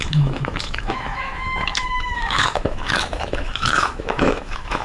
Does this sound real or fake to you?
fake